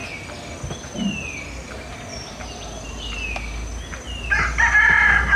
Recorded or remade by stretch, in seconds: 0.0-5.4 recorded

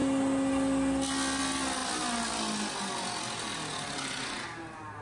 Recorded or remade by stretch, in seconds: 0.0-5.0 recorded